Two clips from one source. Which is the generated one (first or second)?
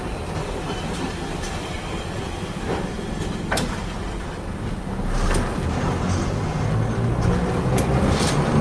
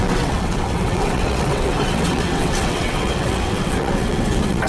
second